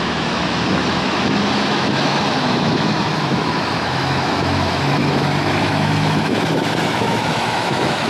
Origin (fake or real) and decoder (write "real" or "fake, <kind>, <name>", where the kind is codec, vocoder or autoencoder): fake, autoencoder, DAC-VAE